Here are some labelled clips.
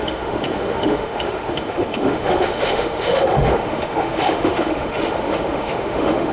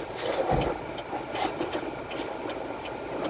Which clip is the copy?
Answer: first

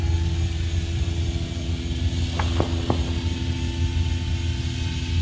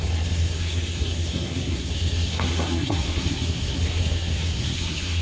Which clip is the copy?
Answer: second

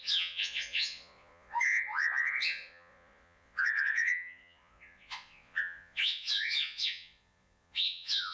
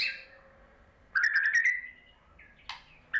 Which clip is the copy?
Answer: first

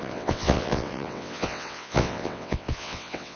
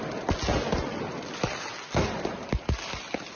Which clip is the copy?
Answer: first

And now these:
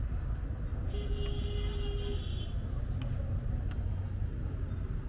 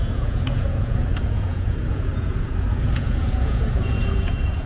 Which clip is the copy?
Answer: second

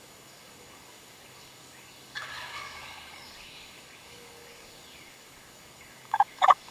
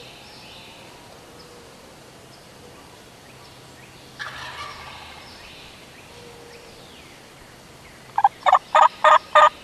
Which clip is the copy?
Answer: first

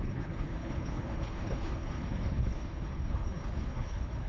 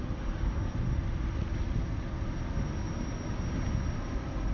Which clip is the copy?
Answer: first